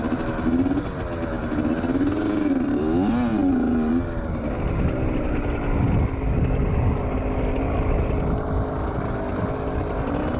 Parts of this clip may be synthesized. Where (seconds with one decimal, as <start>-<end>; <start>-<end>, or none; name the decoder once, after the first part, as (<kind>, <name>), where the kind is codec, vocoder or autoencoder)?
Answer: none